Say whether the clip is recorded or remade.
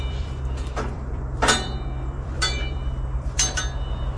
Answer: remade